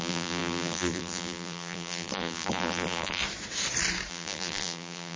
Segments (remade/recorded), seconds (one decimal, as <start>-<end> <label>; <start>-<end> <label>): 0.0-3.2 remade; 3.2-4.1 recorded; 4.1-5.2 remade